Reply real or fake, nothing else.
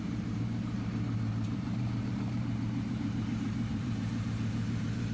fake